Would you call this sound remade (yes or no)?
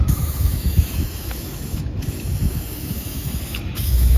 yes